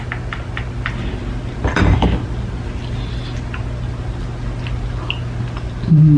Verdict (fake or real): real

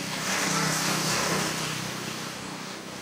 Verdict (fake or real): fake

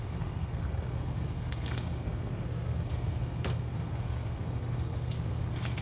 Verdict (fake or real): fake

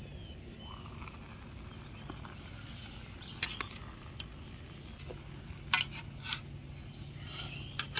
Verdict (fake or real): real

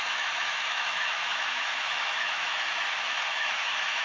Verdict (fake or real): fake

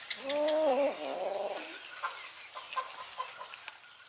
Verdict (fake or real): real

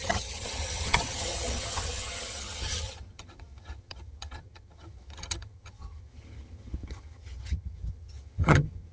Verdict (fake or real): fake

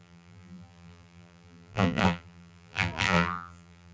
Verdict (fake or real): fake